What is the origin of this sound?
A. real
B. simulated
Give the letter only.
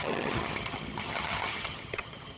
B